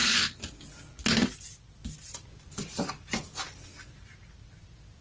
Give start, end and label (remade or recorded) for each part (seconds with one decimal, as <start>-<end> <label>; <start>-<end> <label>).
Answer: 0.0-5.0 recorded